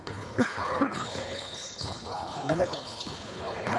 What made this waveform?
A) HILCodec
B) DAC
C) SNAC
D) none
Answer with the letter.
A